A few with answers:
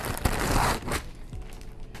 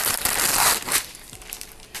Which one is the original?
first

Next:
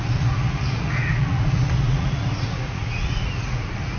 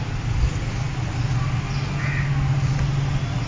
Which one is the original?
second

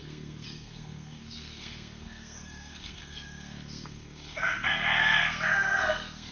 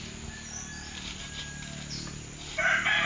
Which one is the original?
second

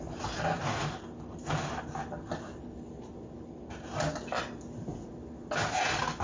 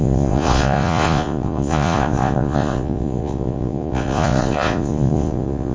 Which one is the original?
first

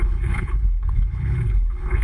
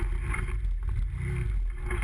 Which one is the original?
second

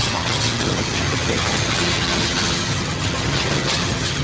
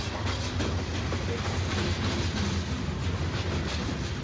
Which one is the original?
second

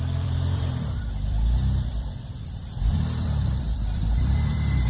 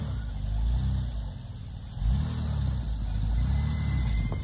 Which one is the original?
second